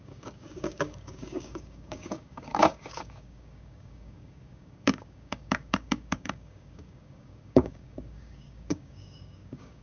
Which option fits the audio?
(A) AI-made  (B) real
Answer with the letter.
A